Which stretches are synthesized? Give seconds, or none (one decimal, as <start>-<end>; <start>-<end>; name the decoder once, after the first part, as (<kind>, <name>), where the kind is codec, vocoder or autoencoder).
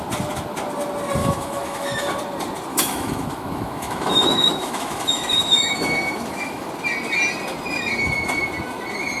1.2-2.1 (autoencoder, DAC-VAE); 2.7-6.7